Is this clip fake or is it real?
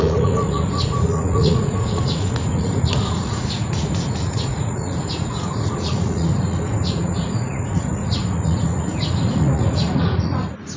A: fake